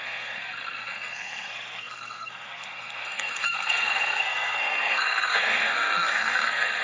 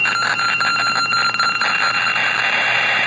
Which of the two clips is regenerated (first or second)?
first